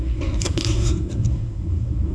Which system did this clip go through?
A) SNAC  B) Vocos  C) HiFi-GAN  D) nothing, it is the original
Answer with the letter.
A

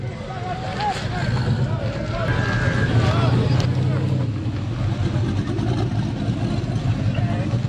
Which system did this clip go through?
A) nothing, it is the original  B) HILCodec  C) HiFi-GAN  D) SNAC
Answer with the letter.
A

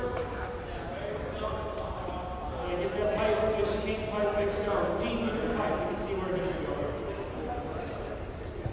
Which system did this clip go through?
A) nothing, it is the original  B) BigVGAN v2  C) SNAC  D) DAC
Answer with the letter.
A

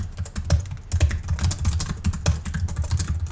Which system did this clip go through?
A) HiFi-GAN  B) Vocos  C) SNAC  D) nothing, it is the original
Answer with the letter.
D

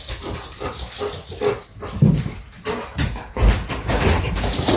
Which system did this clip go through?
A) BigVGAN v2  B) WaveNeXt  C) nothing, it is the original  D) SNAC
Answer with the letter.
C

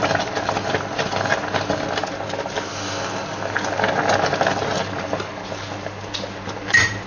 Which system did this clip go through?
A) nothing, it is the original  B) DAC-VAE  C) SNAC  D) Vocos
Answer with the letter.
A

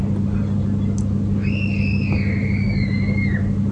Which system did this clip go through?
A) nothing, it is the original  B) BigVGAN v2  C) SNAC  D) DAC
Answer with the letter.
A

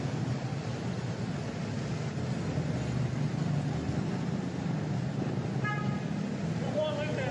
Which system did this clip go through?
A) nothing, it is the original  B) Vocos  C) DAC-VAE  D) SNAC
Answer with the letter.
A